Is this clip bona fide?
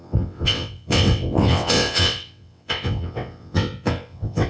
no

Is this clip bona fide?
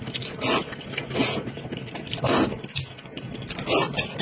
yes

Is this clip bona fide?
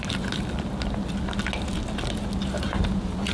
yes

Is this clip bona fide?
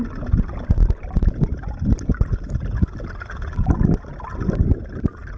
yes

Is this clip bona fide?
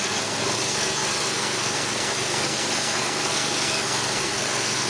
no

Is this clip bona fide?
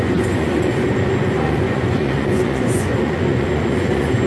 no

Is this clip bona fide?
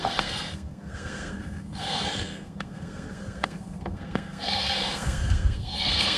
no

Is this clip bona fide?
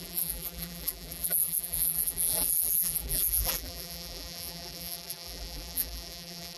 no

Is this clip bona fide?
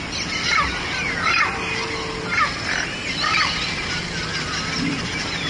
yes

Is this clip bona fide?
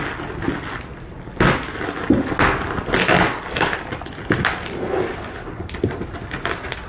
yes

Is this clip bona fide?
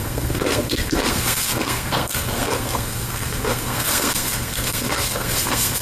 no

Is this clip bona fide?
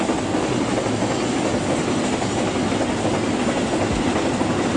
yes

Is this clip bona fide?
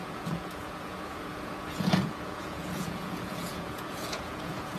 no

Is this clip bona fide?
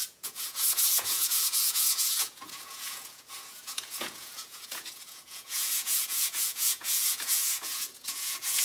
no